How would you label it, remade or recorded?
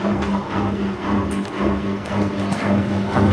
remade